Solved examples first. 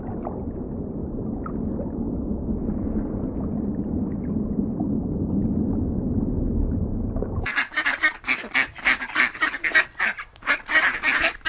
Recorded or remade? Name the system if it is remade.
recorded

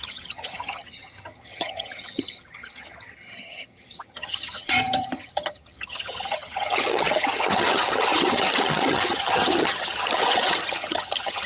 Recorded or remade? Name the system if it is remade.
remade, vocoder, HiFi-GAN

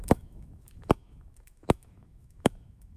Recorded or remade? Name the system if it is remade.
remade, autoencoder, DAC-VAE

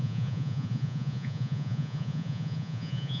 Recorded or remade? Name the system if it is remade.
remade, vocoder, Vocos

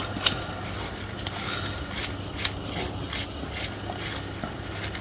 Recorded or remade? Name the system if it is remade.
recorded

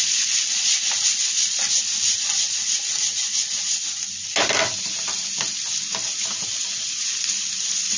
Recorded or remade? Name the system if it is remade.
recorded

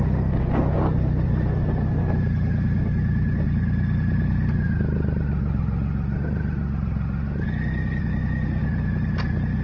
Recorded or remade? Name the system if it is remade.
recorded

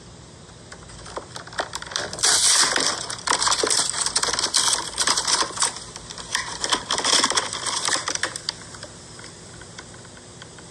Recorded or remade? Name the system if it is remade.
remade, vocoder, BigVGAN v2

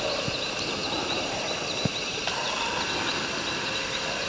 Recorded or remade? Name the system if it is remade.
recorded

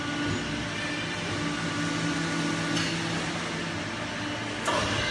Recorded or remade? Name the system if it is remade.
recorded